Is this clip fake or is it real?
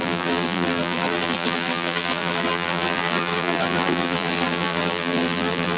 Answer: fake